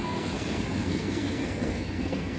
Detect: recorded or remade remade